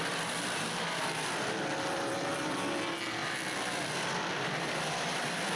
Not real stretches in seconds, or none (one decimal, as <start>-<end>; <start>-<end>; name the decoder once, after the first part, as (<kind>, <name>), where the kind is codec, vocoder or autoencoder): 0.0-2.3 (vocoder, BigVGAN v2); 3.2-5.6